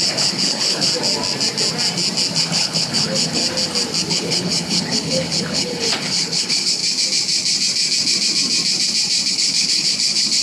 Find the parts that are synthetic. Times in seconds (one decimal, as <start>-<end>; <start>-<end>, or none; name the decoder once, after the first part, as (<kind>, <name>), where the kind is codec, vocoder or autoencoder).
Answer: 0.0-0.9 (codec, HILCodec); 2.4-3.4; 4.1-6.8; 9.3-10.4